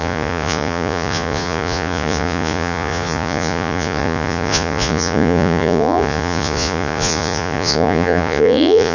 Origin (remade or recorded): remade